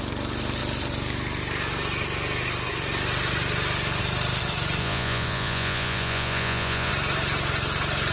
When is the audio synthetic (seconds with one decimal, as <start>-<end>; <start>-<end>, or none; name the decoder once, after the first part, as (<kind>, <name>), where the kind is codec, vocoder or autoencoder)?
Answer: 4.8-6.9 (vocoder, Vocos)